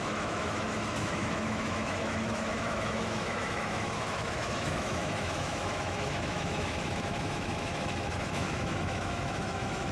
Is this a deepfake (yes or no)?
yes